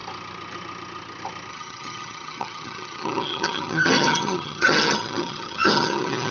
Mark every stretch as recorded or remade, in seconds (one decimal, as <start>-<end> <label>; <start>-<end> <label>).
0.0-1.5 recorded; 1.5-6.3 remade